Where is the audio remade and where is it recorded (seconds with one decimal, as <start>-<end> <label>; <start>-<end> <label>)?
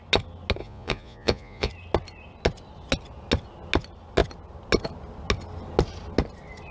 0.0-0.6 recorded; 0.6-1.7 remade; 1.7-6.7 recorded